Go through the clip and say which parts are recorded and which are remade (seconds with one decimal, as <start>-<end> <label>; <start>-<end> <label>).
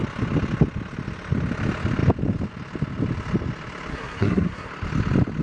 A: 0.0-3.9 recorded; 3.9-4.7 remade; 4.7-5.4 recorded